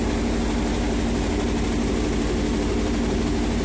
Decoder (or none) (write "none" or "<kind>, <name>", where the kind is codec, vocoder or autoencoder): none